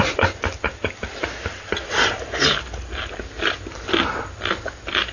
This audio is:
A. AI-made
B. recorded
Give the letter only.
B